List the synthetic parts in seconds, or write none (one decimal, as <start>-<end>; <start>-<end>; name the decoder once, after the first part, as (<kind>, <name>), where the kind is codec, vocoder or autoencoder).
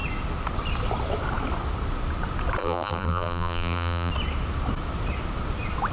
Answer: 2.6-4.1 (vocoder, BigVGAN v2)